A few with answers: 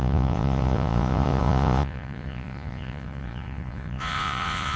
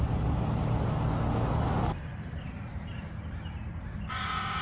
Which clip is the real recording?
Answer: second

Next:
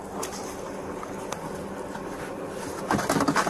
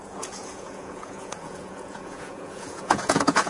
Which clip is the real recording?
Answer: first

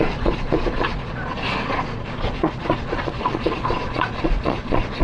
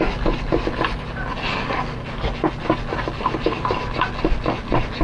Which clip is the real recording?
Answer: second